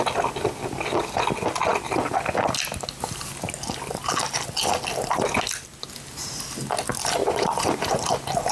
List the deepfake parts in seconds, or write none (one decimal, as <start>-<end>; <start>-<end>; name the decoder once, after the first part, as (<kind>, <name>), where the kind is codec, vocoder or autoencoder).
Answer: 7.2-8.1 (vocoder, BigVGAN v2)